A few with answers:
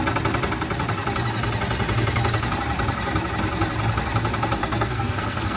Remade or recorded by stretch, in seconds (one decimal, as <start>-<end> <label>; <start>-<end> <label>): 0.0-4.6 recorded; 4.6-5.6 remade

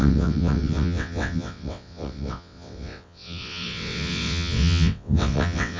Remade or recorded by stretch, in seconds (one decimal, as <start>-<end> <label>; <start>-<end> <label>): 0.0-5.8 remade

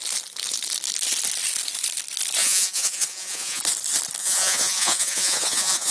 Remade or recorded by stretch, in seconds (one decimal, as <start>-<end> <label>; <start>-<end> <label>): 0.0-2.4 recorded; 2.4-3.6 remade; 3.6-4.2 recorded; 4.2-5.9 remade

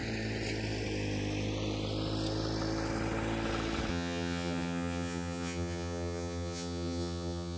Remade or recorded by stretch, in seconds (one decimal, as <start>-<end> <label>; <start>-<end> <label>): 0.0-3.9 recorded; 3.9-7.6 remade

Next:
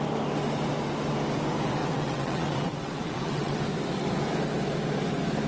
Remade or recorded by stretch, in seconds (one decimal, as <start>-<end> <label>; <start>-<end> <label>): 0.0-1.8 recorded; 1.8-3.6 remade; 3.6-5.5 recorded

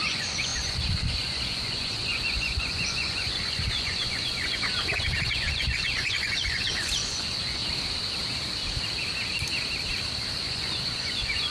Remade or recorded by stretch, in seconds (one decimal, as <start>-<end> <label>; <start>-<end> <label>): 0.0-7.6 remade; 7.6-10.4 recorded; 10.4-11.5 remade

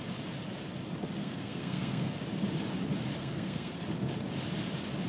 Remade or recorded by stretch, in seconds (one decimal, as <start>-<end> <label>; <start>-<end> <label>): 0.0-1.2 recorded; 1.2-2.1 remade; 2.1-3.2 recorded; 3.2-3.7 remade; 3.7-5.1 recorded